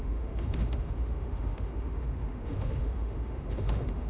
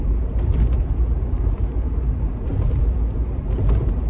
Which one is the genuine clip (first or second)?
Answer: second